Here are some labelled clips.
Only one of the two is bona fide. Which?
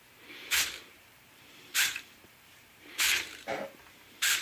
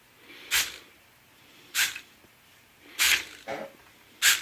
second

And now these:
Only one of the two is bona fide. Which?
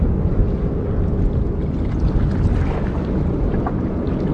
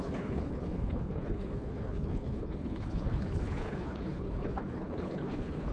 first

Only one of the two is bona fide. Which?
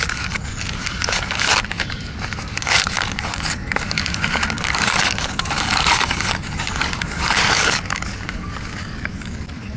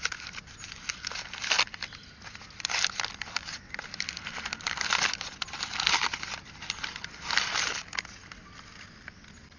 second